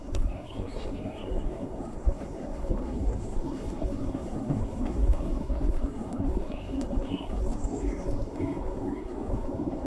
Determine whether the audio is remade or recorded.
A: remade